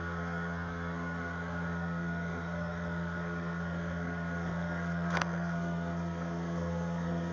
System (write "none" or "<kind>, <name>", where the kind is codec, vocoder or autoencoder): codec, SNAC